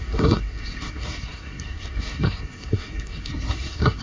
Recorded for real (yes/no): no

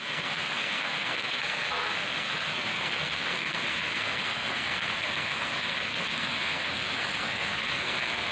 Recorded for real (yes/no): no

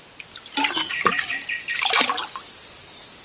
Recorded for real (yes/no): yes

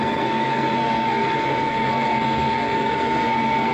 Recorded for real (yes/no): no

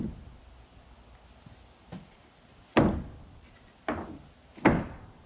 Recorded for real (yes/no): yes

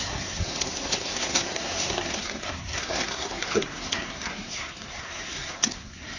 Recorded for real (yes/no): no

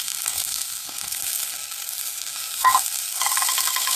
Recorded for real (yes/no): no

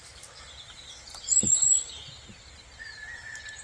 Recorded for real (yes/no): yes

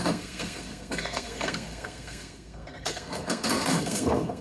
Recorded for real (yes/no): no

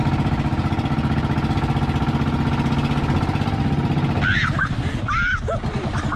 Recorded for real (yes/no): yes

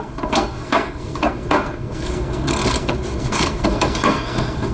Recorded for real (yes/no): no